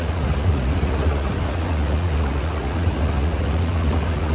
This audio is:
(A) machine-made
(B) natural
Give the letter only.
A